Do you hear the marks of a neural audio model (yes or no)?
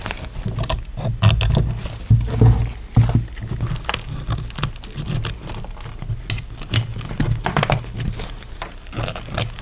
no